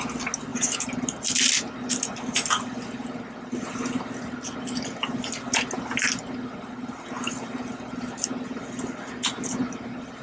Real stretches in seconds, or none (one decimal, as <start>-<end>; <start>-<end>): 0.0-10.2